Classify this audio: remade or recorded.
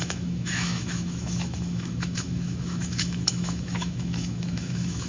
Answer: remade